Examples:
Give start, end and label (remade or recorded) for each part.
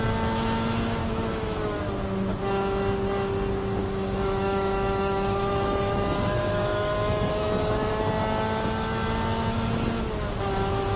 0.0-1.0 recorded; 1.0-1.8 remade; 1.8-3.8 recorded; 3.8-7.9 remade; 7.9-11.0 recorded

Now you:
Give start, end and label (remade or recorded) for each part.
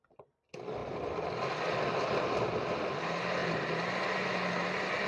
0.0-5.1 recorded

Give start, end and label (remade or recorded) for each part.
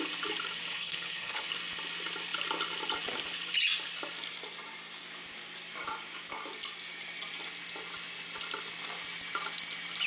0.0-0.7 recorded; 0.7-1.5 remade; 1.5-10.1 recorded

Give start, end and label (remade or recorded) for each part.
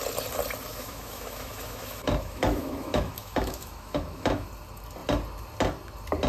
0.0-0.7 recorded; 0.7-4.5 remade; 4.5-6.3 recorded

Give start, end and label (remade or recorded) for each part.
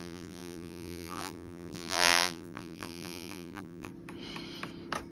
0.0-3.9 remade; 3.9-5.1 recorded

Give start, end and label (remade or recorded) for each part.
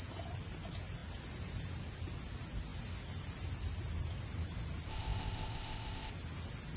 0.0-4.9 recorded; 4.9-6.1 remade; 6.1-6.8 recorded